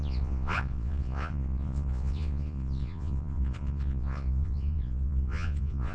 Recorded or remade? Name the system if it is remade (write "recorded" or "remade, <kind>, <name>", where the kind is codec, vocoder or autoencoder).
remade, vocoder, Vocos